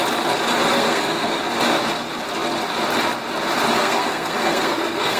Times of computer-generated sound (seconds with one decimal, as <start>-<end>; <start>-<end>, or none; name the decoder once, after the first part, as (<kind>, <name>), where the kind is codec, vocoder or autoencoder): 0.7-1.4 (codec, SNAC); 3.8-5.2